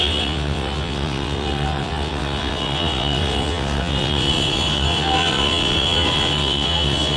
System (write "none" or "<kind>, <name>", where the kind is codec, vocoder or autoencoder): vocoder, WaveNeXt